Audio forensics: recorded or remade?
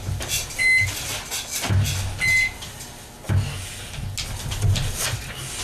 recorded